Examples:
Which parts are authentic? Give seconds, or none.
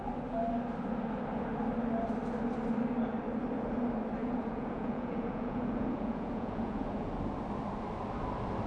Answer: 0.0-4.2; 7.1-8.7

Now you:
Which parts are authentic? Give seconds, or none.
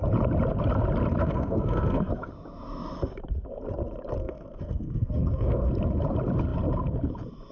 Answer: 0.0-1.2; 2.3-4.2; 5.7-7.5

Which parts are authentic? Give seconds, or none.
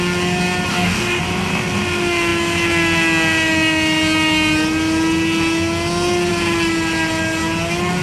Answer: 0.0-0.7; 1.2-8.0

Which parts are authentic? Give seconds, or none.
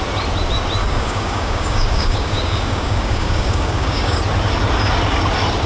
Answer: 0.0-0.8; 4.2-5.7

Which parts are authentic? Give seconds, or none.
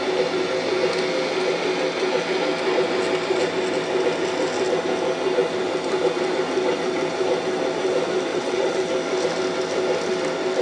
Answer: 0.0-8.3; 8.8-10.6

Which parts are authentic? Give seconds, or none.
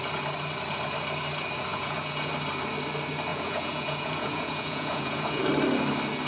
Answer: 0.0-1.7; 2.3-3.3; 5.4-6.3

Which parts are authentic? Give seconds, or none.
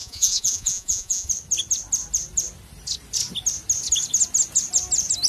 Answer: 1.3-5.3